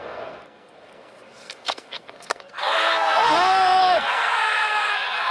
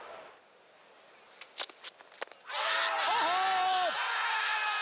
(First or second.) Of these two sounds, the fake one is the first